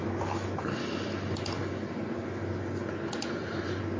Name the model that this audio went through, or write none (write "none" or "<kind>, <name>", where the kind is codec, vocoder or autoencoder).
none